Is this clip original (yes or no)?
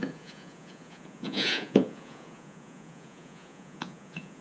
no